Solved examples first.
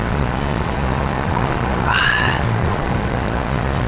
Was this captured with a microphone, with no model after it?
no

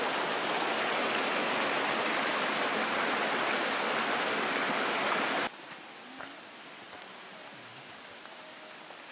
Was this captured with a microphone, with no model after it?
yes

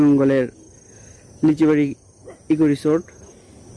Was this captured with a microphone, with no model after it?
yes